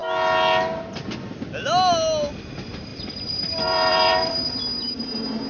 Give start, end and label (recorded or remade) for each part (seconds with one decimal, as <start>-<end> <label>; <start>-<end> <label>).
0.0-2.9 recorded; 2.9-4.3 remade; 4.3-5.5 recorded